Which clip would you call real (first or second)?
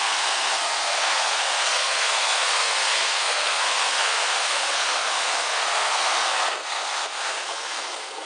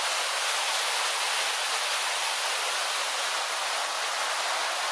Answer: second